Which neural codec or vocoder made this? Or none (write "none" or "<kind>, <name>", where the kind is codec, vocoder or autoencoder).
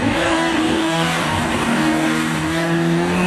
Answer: codec, DAC